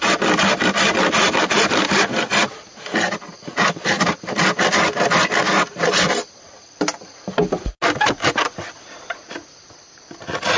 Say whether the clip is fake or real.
real